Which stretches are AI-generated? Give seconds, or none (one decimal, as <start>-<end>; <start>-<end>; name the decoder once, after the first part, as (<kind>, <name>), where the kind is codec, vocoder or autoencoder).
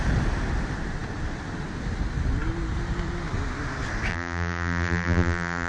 4.1-5.7 (vocoder, BigVGAN v2)